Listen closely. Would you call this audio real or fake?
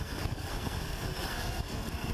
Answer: fake